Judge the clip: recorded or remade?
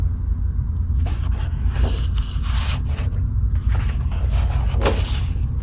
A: recorded